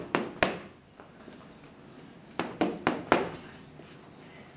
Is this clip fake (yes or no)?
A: no